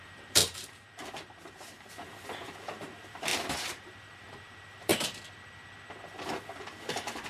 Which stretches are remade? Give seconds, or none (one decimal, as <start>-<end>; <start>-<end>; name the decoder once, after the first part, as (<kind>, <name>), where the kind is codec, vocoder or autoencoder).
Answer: 0.0-4.9 (vocoder, BigVGAN v2); 6.1-7.3